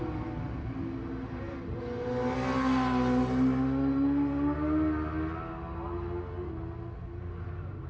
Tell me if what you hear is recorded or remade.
recorded